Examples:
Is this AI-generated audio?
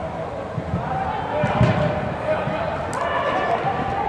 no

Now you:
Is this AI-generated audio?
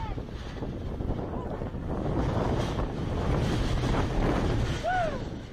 no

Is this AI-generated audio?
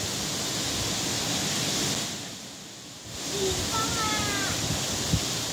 no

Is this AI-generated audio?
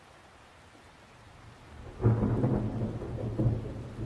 no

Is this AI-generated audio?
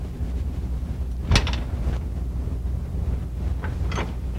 no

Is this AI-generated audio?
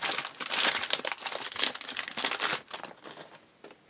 no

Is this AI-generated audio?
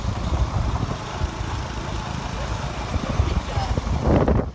no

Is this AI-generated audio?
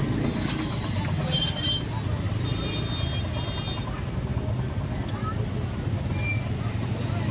no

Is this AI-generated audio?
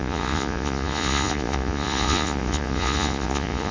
yes